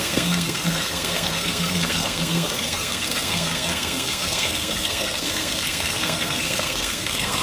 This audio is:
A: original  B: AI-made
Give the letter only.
B